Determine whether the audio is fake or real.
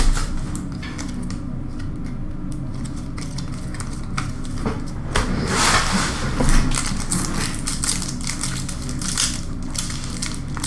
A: real